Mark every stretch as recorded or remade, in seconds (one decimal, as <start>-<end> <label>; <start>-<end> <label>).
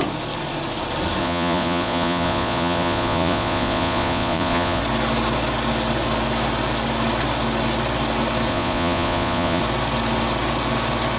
0.0-1.2 recorded; 1.2-4.8 remade; 4.8-8.5 recorded; 8.5-9.6 remade; 9.6-11.2 recorded